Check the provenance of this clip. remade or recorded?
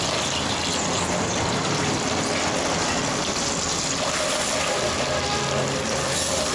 recorded